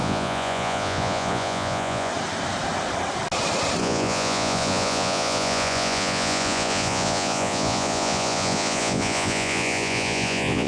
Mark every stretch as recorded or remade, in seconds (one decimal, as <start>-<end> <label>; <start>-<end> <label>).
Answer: 0.0-2.1 remade; 2.1-3.8 recorded; 3.8-10.7 remade